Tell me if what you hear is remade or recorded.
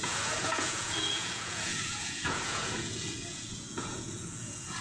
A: remade